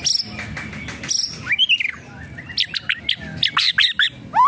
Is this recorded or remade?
recorded